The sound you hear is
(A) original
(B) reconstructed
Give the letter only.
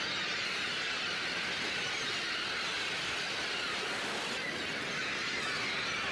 A